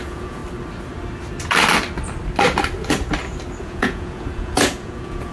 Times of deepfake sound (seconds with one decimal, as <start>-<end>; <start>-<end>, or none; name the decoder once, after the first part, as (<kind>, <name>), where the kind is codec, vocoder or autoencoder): 0.0-0.4 (vocoder, Vocos); 3.6-5.3